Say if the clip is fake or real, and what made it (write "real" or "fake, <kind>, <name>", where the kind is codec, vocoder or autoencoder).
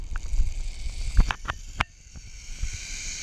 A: fake, vocoder, BigVGAN v2